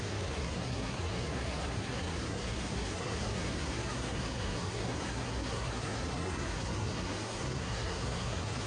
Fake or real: fake